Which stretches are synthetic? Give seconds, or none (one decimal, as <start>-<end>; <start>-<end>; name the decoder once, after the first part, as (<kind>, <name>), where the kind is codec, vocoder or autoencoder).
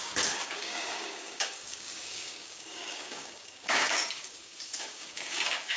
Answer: 0.0-5.8 (codec, DAC)